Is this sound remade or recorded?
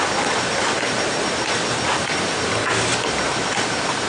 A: recorded